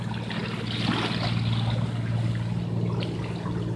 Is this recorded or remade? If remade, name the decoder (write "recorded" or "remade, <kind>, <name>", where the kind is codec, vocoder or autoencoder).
recorded